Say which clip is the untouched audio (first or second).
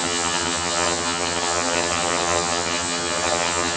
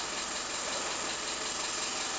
second